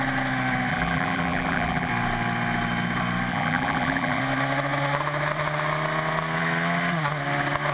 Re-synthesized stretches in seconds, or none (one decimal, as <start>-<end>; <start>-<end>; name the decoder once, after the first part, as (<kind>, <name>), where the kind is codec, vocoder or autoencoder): 0.7-1.9 (vocoder, BigVGAN v2); 3.3-4.2